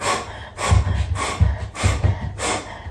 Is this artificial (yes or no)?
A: no